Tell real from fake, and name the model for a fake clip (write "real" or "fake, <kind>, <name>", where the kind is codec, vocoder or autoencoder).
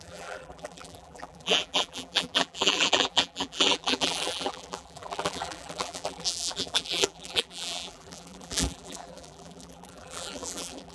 fake, vocoder, BigVGAN v2